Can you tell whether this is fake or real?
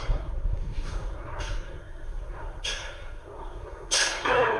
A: fake